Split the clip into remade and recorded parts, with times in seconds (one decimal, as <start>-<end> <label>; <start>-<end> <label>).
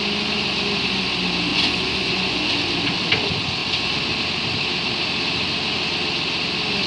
0.0-1.5 recorded; 1.5-2.5 remade; 2.5-6.9 recorded